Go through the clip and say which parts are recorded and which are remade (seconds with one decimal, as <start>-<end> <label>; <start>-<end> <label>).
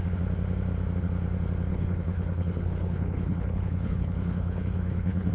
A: 0.0-1.7 recorded; 1.7-5.3 remade